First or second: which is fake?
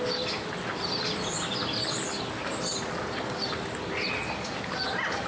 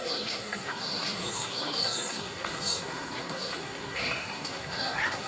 second